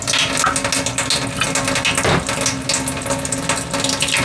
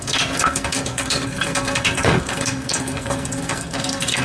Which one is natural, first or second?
first